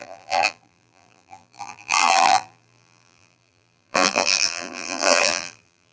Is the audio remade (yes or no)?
yes